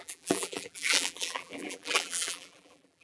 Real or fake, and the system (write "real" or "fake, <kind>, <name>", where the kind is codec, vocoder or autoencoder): fake, vocoder, BigVGAN v2